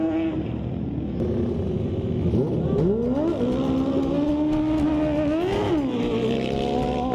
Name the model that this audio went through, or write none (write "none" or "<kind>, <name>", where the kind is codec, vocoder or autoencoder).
none